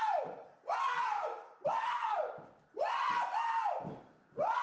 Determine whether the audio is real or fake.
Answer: real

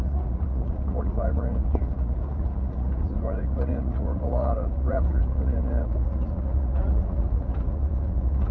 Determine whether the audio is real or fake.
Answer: fake